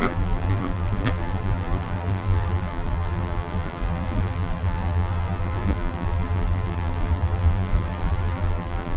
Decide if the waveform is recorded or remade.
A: remade